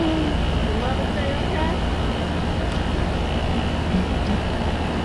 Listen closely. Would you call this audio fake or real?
real